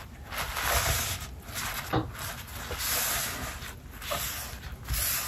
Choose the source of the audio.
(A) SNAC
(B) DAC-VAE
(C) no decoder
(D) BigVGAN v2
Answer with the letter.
C